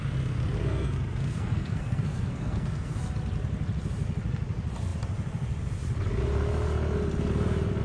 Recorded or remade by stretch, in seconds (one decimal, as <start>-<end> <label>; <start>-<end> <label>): 0.0-0.6 recorded; 0.6-3.0 remade; 3.0-7.8 recorded